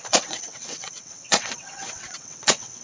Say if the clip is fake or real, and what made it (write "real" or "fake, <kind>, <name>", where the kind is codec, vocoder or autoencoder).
fake, vocoder, WaveNeXt